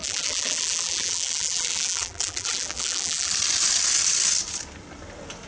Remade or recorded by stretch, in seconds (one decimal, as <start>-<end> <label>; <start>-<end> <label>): 0.0-3.3 remade; 3.3-5.5 recorded